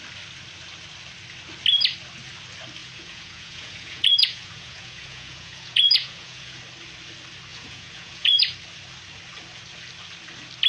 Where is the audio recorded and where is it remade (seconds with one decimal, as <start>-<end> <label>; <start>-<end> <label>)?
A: 0.0-2.8 recorded; 2.8-6.6 remade; 6.6-7.5 recorded; 7.5-8.4 remade; 8.4-10.7 recorded